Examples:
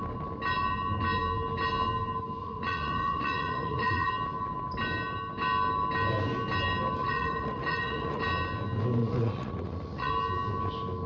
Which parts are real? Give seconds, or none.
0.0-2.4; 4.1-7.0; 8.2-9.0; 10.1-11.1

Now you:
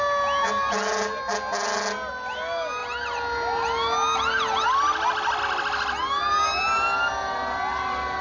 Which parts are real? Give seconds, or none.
0.0-8.2

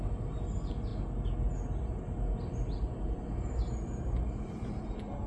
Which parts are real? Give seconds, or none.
0.0-5.3